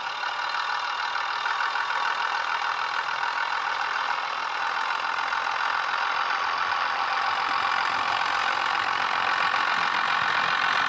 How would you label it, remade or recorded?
recorded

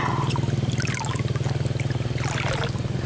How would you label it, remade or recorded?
recorded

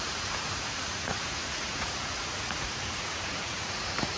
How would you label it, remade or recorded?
remade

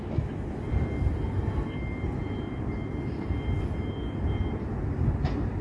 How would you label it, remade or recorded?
recorded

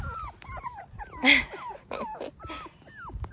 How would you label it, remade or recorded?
recorded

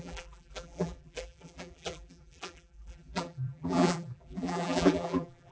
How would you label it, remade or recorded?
remade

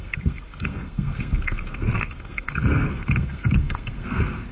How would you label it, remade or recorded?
remade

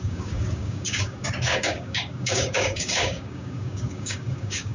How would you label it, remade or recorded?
remade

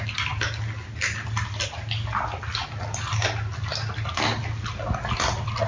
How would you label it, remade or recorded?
recorded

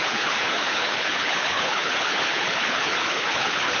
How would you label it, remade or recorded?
remade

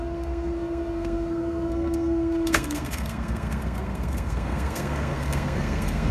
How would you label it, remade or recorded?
remade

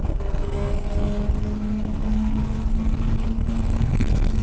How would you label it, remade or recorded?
remade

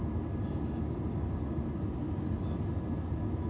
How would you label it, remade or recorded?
recorded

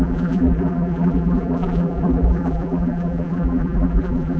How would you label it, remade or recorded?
remade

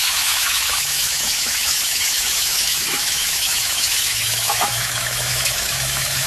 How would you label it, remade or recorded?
remade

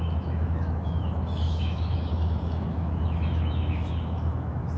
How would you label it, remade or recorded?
remade